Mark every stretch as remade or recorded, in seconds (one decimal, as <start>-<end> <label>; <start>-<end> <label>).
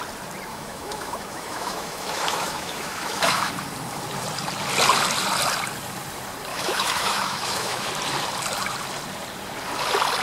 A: 0.0-0.5 recorded; 0.5-3.5 remade; 3.5-6.5 recorded; 6.5-7.9 remade; 7.9-10.2 recorded